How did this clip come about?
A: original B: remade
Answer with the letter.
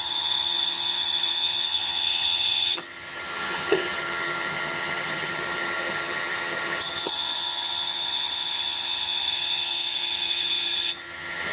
B